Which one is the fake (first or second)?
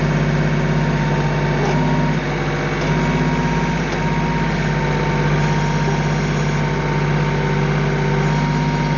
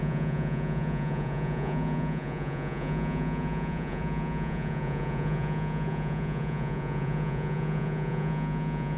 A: second